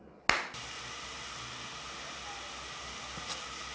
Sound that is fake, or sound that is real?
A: real